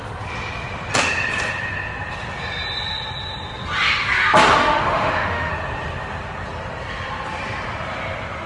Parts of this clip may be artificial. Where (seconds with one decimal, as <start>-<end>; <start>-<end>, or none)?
4.6-5.5